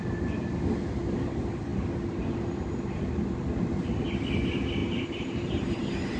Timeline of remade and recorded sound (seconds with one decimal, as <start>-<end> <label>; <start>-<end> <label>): 0.0-4.8 recorded; 4.8-6.2 remade

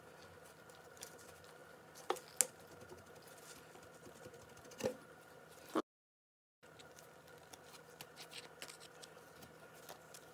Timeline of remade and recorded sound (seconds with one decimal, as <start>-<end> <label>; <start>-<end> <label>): 0.0-10.3 recorded

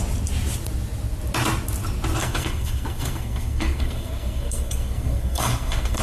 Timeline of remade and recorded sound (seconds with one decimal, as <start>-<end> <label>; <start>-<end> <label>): 0.0-2.2 recorded; 2.2-6.0 remade

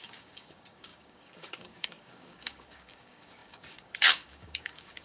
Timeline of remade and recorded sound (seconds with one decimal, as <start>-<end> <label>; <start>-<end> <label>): 0.0-5.0 remade

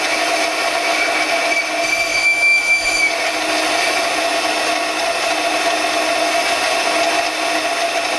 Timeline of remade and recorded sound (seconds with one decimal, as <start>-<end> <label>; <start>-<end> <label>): 0.0-2.1 recorded; 2.1-3.1 remade; 3.1-8.2 recorded

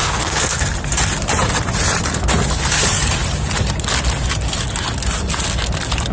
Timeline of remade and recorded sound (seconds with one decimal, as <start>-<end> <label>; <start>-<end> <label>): 0.0-0.6 remade; 0.6-6.1 recorded

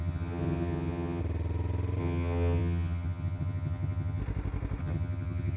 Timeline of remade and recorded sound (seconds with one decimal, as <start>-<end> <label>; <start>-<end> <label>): 0.0-1.2 remade; 1.2-2.0 recorded; 2.0-4.2 remade; 4.2-4.8 recorded; 4.8-5.6 remade

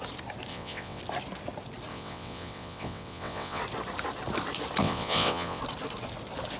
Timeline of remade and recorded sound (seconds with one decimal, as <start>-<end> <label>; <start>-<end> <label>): 0.0-0.5 recorded; 0.5-1.0 remade; 1.0-1.9 recorded; 1.9-3.6 remade; 3.6-4.8 recorded; 4.8-5.6 remade; 5.6-6.6 recorded